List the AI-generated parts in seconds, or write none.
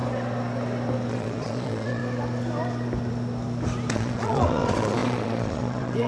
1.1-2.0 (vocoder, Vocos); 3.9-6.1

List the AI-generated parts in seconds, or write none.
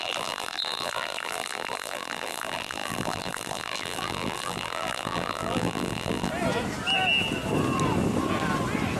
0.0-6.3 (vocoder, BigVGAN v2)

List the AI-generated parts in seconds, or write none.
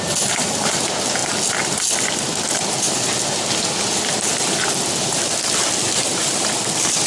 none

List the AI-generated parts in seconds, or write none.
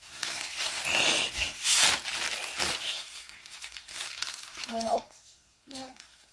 0.0-0.8 (codec, SNAC); 1.3-1.8; 2.8-6.3